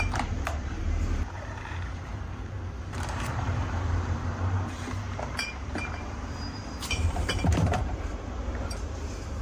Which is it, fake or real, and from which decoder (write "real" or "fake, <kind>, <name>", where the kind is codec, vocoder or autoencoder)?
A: fake, vocoder, BigVGAN v2